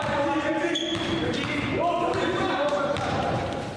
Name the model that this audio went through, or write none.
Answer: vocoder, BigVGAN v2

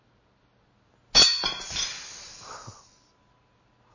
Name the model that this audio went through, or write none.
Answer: none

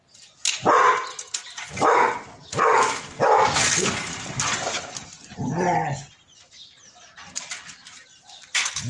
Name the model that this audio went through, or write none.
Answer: none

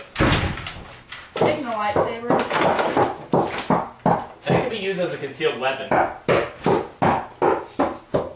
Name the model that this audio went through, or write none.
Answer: none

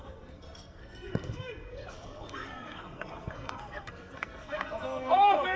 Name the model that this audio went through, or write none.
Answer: codec, SNAC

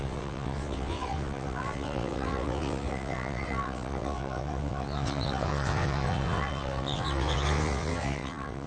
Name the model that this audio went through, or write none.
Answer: vocoder, WaveNeXt